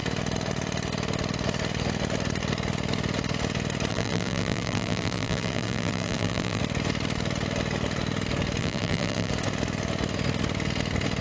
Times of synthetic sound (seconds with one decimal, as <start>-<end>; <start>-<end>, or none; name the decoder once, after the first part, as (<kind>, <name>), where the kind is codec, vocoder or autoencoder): 3.9-6.6 (vocoder, BigVGAN v2); 8.6-9.3